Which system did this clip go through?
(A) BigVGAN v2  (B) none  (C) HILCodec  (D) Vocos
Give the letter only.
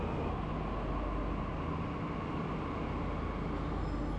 B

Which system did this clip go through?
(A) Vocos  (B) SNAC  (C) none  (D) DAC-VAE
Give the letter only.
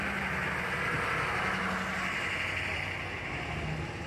C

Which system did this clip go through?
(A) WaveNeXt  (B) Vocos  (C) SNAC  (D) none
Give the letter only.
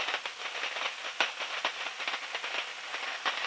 D